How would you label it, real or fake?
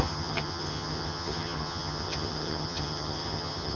fake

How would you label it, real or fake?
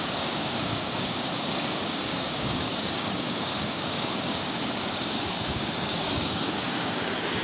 fake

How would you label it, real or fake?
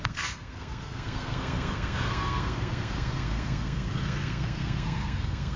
fake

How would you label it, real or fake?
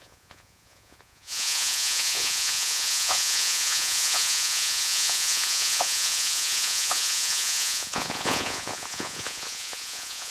fake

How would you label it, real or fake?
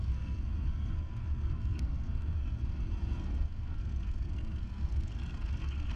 fake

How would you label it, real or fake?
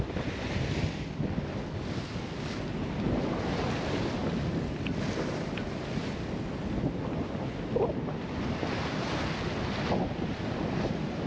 real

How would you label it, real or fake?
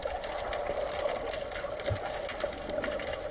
real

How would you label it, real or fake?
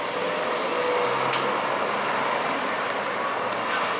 real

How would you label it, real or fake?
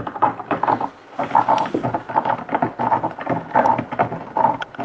real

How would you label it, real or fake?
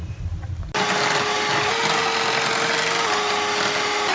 real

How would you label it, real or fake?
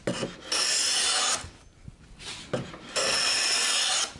real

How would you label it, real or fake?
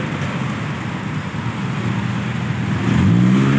real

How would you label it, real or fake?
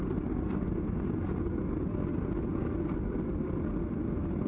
real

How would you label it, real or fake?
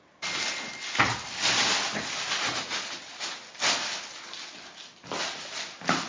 real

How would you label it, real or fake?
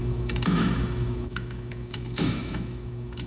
fake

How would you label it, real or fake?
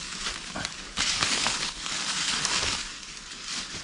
fake